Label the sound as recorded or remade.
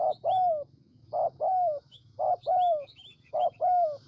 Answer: remade